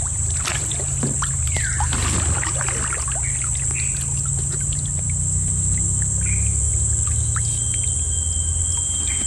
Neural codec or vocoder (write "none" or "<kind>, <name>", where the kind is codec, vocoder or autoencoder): none